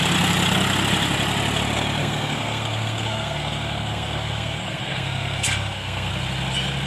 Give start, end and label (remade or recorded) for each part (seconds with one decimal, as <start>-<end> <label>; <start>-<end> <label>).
0.0-2.0 recorded; 2.0-6.1 remade; 6.1-6.9 recorded